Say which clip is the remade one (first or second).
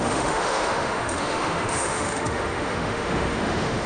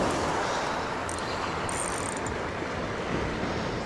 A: first